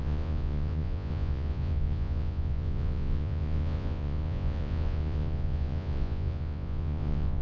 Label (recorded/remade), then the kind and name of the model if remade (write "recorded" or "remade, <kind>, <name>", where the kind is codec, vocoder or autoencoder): remade, vocoder, Vocos